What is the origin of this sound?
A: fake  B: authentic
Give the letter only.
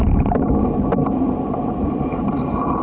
A